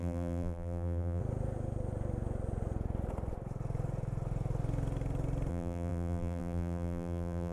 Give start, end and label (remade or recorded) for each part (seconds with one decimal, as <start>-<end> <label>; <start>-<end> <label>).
0.0-1.2 remade; 1.2-5.5 recorded; 5.5-7.5 remade